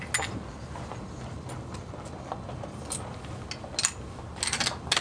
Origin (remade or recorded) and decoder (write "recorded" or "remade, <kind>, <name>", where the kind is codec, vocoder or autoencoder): recorded